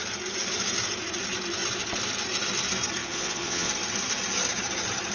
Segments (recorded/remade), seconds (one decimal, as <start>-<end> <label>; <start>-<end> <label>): 0.0-3.0 recorded; 3.0-3.7 remade; 3.7-5.1 recorded